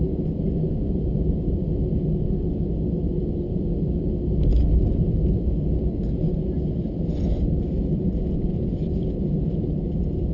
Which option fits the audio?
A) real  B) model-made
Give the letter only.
A